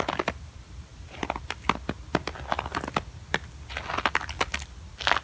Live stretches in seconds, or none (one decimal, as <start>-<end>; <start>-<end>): 0.9-3.8